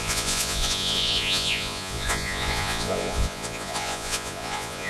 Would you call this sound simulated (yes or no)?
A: yes